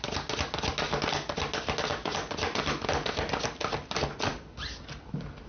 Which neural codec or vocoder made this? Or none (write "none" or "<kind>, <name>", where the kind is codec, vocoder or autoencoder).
none